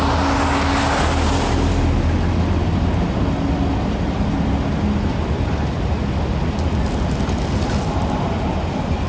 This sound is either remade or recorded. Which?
recorded